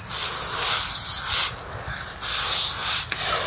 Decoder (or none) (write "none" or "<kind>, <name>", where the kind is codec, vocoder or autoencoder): none